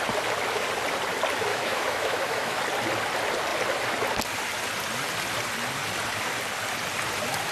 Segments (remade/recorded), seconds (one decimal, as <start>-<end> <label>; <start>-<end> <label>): 0.0-1.5 recorded; 1.5-2.6 remade; 2.6-7.5 recorded